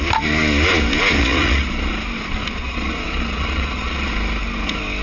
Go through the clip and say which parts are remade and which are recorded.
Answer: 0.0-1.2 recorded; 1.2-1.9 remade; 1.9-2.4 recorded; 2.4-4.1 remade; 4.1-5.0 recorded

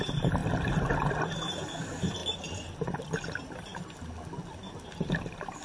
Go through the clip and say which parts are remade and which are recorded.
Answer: 0.0-5.6 recorded

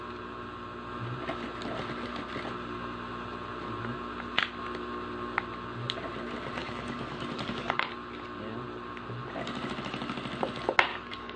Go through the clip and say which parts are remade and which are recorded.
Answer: 0.0-6.6 recorded; 6.6-7.9 remade; 7.9-10.9 recorded; 10.9-11.4 remade

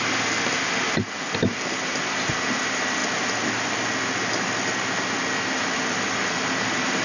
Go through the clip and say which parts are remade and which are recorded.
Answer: 0.0-7.0 recorded

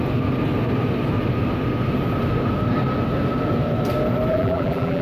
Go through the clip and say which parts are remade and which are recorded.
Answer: 0.0-4.3 recorded; 4.3-5.0 remade

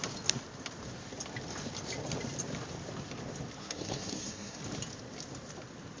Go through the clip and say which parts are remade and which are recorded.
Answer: 0.0-3.6 recorded; 3.6-4.6 remade; 4.6-6.0 recorded

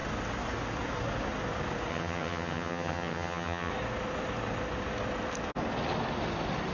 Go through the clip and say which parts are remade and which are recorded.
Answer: 0.0-1.9 recorded; 1.9-3.7 remade; 3.7-6.7 recorded